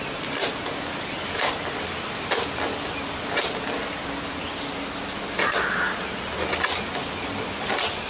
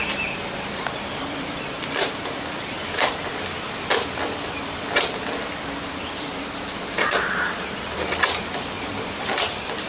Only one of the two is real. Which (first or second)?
first